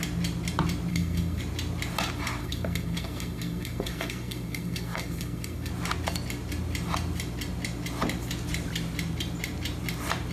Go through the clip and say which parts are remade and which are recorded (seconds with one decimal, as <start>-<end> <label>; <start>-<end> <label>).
0.0-0.9 recorded; 0.9-1.4 remade; 1.4-2.4 recorded; 2.4-5.7 remade; 5.7-10.3 recorded